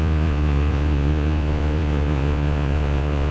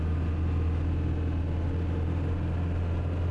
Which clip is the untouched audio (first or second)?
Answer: second